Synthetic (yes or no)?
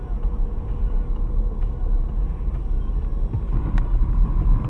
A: no